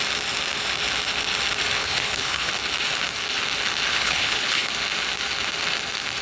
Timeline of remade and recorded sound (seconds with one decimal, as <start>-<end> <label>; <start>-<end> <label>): 0.0-1.8 recorded; 1.8-2.5 remade; 2.5-3.9 recorded; 3.9-4.7 remade; 4.7-6.2 recorded